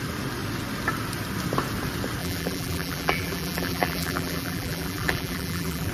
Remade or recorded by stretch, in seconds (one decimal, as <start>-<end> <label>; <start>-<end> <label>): 0.0-2.2 recorded; 2.2-5.9 remade